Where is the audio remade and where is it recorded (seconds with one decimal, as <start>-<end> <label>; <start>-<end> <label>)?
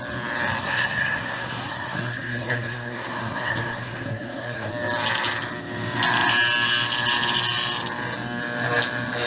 0.0-0.6 recorded; 0.6-4.7 remade; 4.7-9.3 recorded